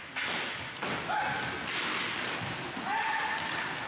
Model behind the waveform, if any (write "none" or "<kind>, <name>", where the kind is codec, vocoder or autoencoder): none